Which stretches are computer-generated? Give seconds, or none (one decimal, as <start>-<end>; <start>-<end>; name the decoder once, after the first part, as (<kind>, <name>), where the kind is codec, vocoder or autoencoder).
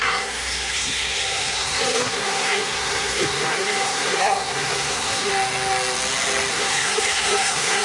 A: 0.0-5.3 (codec, SNAC); 6.5-7.8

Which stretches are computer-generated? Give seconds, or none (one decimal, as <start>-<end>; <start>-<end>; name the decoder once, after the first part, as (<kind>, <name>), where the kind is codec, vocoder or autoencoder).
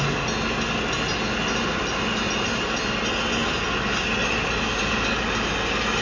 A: none